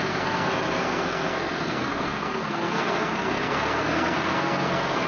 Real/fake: fake